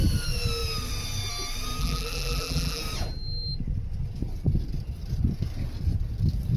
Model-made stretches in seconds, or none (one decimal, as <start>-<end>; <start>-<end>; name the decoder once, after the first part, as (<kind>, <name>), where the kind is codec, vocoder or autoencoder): 1.8-2.8 (vocoder, BigVGAN v2)